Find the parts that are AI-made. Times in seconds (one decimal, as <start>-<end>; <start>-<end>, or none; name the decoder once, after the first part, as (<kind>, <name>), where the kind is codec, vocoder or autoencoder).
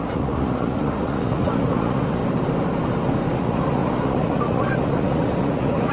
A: 0.0-2.2 (vocoder, Vocos); 3.4-5.9